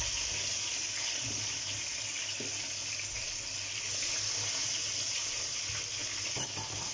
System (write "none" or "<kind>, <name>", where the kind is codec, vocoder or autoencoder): none